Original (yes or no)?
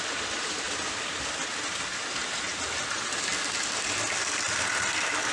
yes